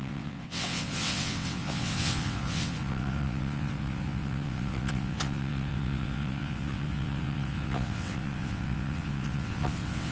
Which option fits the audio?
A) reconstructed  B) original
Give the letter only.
A